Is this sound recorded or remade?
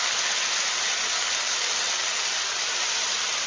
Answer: remade